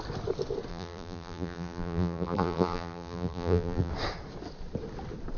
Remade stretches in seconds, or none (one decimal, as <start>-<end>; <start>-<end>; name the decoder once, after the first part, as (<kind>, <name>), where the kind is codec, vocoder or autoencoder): 0.7-3.9 (vocoder, BigVGAN v2)